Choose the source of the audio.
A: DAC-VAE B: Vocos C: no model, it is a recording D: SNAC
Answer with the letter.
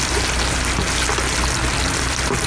C